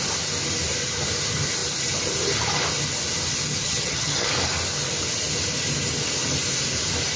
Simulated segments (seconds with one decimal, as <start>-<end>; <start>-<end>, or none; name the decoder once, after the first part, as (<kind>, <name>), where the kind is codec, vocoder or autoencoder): 3.6-4.3 (vocoder, HiFi-GAN)